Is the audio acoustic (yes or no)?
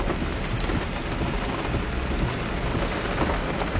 yes